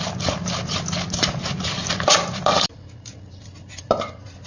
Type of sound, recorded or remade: remade